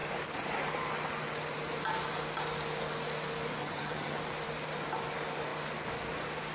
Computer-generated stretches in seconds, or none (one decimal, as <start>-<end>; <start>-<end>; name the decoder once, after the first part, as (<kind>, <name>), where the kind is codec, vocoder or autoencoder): 3.6-4.2 (vocoder, HiFi-GAN)